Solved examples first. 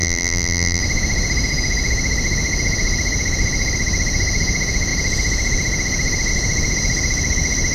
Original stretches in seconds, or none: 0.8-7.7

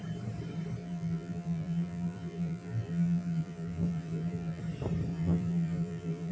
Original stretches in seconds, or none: 0.0-0.8; 4.6-5.1